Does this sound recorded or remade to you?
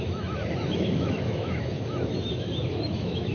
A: remade